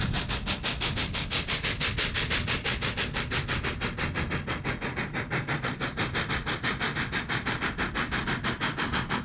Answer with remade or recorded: recorded